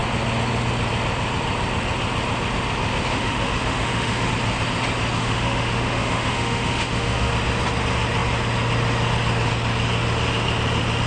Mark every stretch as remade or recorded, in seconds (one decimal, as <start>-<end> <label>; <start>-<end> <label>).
0.0-3.1 recorded; 3.1-4.3 remade; 4.3-5.2 recorded; 5.2-7.3 remade; 7.3-11.1 recorded

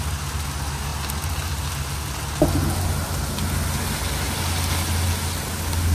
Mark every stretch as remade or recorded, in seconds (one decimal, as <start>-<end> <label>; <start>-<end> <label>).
0.0-5.9 recorded

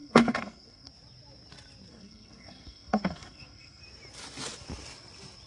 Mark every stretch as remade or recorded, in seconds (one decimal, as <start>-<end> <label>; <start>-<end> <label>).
0.0-0.9 remade; 0.9-1.9 recorded; 1.9-3.8 remade; 3.8-5.5 recorded

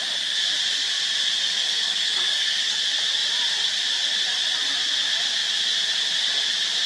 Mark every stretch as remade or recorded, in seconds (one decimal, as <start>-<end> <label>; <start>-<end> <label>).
0.0-1.6 recorded; 1.6-2.8 remade; 2.8-6.9 recorded

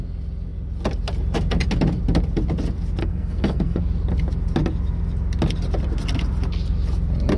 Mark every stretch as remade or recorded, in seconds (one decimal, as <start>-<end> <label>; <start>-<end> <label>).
0.0-3.0 recorded; 3.0-3.8 remade; 3.8-7.4 recorded

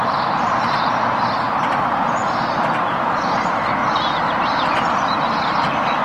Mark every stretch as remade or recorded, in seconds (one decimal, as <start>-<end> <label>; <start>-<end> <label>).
0.0-3.8 remade; 3.8-5.6 recorded; 5.6-6.0 remade

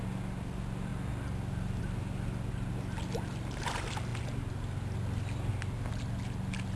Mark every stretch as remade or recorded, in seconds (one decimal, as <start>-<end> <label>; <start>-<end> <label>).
0.0-6.8 recorded